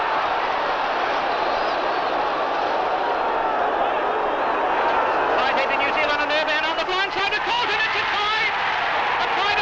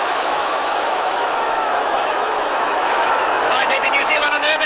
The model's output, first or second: second